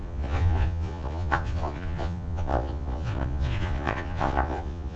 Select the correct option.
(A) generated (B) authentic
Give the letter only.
A